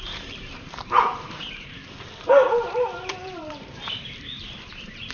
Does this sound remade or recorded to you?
remade